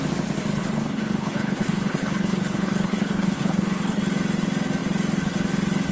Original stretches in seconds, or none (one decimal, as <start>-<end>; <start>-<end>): 0.0-0.5; 4.0-5.9